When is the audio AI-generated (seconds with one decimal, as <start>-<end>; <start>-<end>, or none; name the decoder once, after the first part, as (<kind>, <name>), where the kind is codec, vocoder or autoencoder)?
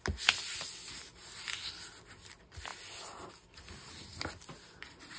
none